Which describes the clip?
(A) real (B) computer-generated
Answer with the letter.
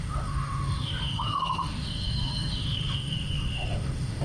B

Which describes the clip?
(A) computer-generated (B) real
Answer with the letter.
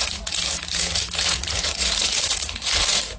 A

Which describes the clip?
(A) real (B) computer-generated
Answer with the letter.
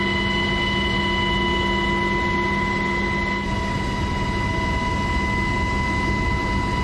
A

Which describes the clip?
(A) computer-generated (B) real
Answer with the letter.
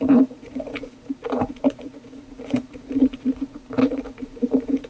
A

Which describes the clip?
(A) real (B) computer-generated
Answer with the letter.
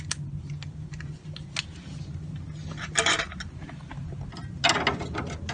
A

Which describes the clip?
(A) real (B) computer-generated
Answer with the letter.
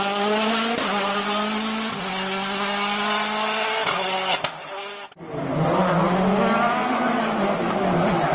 A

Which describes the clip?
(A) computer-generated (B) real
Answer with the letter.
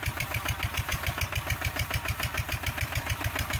A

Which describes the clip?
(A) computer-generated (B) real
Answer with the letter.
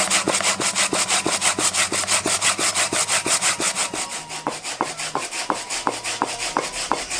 B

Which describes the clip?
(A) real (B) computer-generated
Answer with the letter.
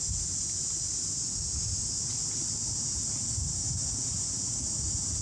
A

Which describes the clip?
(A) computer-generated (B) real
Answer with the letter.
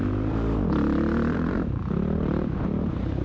A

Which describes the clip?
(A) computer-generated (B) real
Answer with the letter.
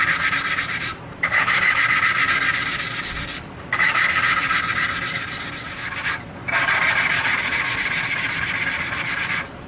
A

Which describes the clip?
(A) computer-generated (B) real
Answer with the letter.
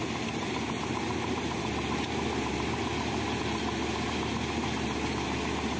B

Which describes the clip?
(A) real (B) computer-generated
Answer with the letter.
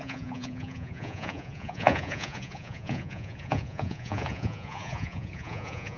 B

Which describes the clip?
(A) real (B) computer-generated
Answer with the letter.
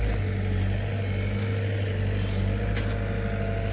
A